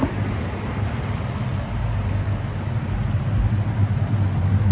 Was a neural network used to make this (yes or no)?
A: no